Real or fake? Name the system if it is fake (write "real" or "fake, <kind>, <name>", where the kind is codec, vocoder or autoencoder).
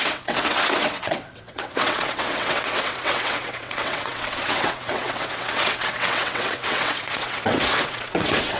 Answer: fake, vocoder, WaveNeXt